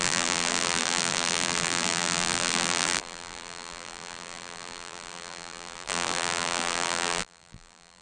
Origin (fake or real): fake